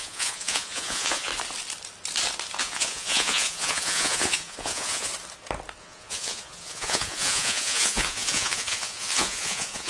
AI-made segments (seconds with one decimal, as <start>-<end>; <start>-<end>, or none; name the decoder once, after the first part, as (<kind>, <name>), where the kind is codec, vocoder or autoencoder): 0.0-1.3 (vocoder, Vocos); 2.6-5.1; 5.8-9.9